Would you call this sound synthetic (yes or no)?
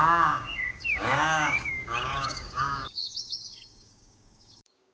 yes